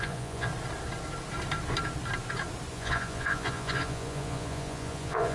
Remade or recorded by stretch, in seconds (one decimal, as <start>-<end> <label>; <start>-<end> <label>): 0.0-0.5 remade; 0.5-2.7 recorded; 2.7-5.3 remade